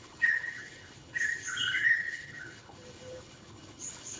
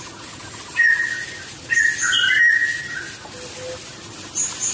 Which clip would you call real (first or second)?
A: second